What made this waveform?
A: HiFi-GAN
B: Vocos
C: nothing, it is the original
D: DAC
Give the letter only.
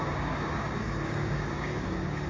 D